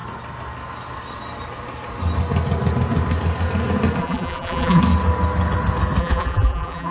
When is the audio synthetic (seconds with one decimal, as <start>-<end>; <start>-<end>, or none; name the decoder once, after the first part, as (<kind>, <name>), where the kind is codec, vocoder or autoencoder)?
4.0-4.8 (vocoder, BigVGAN v2); 6.0-6.9